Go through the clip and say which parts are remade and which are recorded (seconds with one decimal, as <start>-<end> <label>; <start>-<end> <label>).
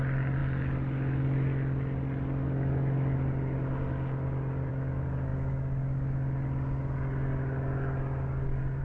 0.0-8.8 recorded